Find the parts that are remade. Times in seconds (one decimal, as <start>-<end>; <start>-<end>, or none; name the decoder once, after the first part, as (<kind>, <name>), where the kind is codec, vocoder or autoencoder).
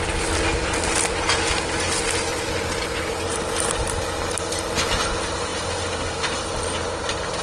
none